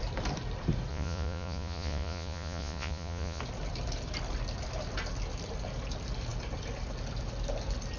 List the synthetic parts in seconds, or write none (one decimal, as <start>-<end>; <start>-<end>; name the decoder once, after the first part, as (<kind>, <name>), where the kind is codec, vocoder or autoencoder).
0.9-3.4 (vocoder, Vocos)